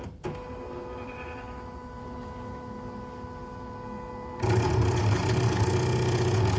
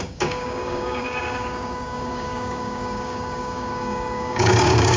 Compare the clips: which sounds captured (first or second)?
first